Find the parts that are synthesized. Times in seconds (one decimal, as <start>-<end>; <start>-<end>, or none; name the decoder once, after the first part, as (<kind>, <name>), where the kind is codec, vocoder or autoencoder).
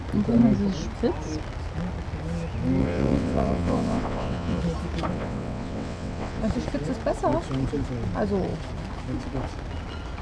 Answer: 2.8-4.6 (vocoder, WaveNeXt); 5.1-6.4